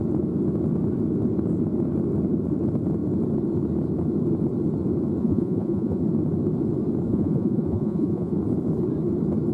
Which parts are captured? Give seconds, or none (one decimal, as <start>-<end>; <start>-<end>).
0.0-5.2; 6.0-7.1; 8.3-9.5